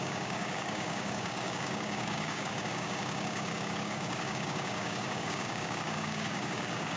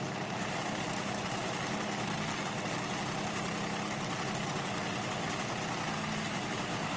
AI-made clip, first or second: first